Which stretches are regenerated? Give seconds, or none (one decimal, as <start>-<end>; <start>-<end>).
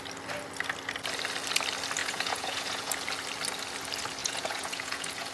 2.0-2.9; 4.2-5.3